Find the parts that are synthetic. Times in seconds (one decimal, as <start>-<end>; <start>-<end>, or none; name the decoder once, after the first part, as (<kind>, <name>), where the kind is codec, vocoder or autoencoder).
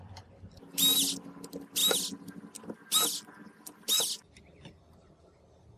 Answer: none